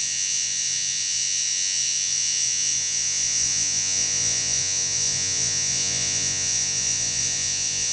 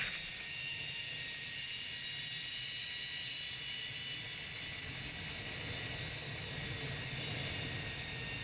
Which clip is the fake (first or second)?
first